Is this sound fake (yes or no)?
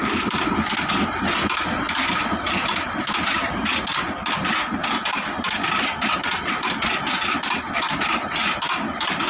no